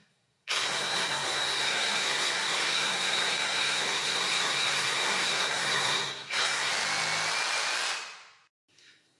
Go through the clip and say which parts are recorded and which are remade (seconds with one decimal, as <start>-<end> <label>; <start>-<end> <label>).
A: 0.0-6.7 remade; 6.7-8.7 recorded; 8.7-9.2 remade